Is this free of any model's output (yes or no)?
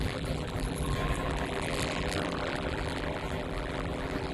no